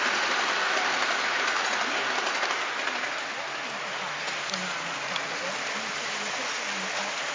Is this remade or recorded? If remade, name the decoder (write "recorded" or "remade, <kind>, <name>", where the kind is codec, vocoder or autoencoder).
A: recorded